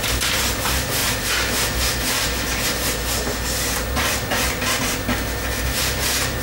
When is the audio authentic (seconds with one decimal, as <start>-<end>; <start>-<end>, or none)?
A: 0.0-6.4